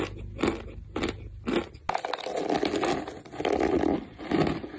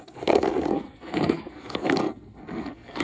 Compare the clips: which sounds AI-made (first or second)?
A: second